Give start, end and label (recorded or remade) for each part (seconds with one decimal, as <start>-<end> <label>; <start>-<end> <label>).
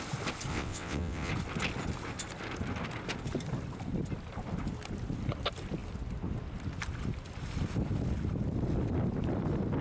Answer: 0.0-0.5 recorded; 0.5-1.3 remade; 1.3-9.8 recorded